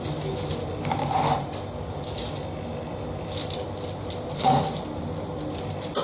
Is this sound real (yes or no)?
yes